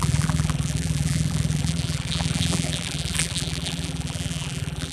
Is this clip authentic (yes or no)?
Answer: no